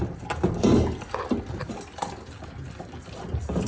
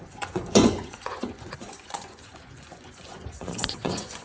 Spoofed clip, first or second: second